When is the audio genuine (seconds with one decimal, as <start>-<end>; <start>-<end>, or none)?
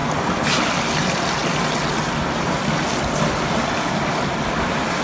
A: 0.0-5.0